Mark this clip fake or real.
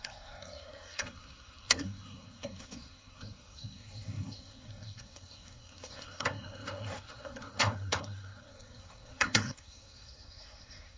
fake